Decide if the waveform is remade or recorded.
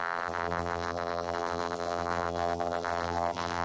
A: remade